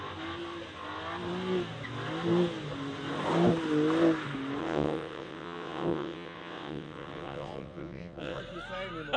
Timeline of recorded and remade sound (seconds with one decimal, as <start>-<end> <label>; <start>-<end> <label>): 0.0-4.6 recorded; 4.6-8.4 remade; 8.4-9.2 recorded